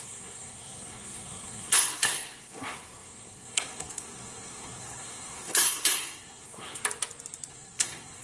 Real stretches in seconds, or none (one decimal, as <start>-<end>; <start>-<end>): 6.8-7.5

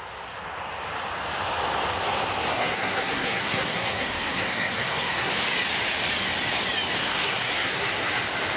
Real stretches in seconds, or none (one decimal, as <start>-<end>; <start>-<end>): 0.0-2.5; 5.3-7.0; 8.1-8.6

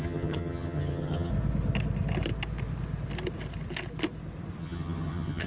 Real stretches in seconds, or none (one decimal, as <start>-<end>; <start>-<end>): 1.3-4.6

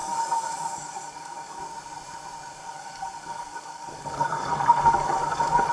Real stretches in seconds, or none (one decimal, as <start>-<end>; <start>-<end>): 1.6-2.5

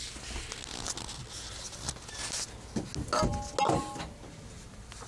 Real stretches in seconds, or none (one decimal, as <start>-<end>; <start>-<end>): 0.0-5.1

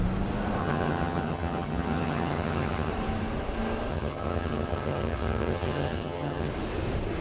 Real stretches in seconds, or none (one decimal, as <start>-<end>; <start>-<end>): 0.0-0.6; 2.9-3.9; 6.5-7.2

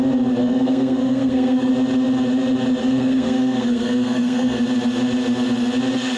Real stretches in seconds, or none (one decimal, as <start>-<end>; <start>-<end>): 0.0-0.4; 1.7-2.8; 4.6-6.2

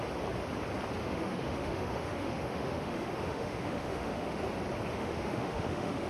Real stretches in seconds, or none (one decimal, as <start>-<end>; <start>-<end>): 0.0-1.0; 4.4-4.9